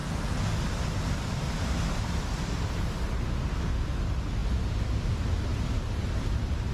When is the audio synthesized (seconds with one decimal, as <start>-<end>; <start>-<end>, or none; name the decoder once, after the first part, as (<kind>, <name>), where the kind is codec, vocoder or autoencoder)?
none